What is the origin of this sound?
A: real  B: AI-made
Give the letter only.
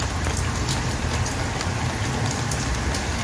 A